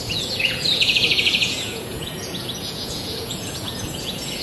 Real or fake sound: fake